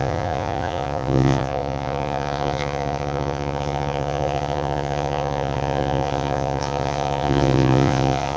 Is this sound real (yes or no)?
no